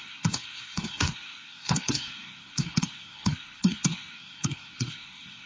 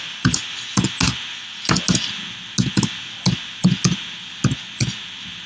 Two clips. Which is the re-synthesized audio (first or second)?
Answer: first